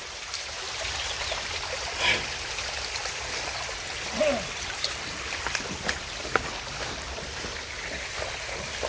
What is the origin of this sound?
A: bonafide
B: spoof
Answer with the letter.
A